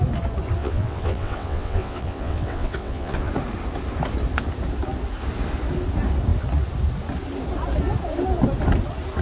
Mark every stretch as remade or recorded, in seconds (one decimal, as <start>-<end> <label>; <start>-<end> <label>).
0.0-0.6 recorded; 0.6-3.3 remade; 3.3-9.2 recorded